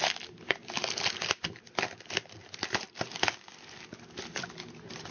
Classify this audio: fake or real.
real